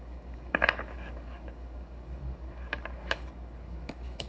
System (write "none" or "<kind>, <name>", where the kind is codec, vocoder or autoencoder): codec, DAC